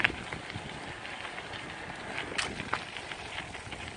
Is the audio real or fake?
real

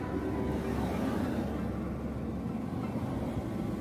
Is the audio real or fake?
real